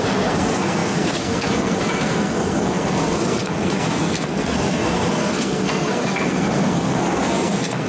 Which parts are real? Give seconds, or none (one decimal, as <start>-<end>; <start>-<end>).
none